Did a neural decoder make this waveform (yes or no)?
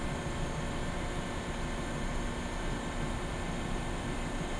no